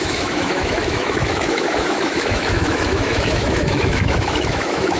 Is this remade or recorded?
remade